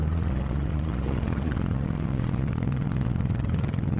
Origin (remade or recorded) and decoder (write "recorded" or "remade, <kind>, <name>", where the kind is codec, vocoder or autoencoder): remade, vocoder, Vocos